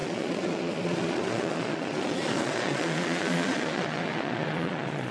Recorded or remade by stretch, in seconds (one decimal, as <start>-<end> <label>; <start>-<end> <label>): 0.0-5.1 remade